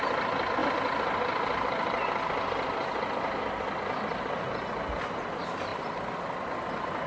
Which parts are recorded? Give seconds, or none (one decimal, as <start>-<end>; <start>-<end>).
0.0-7.1